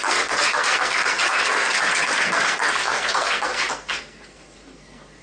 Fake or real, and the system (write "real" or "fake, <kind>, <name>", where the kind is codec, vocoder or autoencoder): fake, codec, SNAC